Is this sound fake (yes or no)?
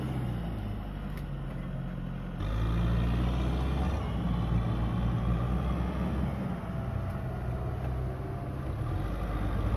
no